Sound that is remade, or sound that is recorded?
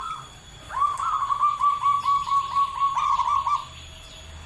recorded